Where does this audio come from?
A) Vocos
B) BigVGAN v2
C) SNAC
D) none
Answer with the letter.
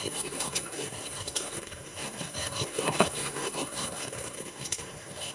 C